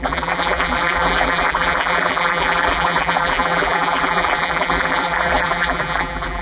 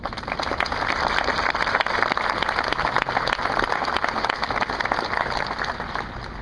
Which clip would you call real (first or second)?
second